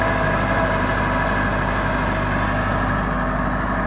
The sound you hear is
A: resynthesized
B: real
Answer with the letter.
B